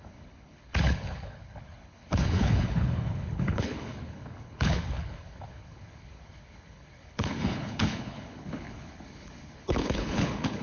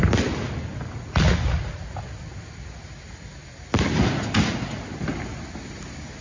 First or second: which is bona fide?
second